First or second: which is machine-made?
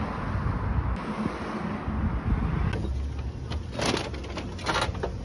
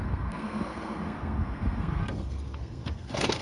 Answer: second